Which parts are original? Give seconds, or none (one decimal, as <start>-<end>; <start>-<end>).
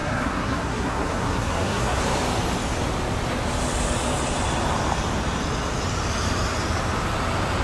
2.0-7.6